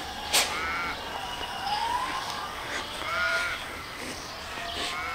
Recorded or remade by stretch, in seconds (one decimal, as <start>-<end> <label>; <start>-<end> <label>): 0.0-1.2 recorded; 1.2-4.3 remade; 4.3-5.1 recorded